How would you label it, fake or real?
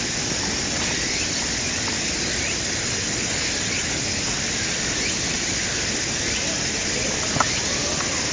real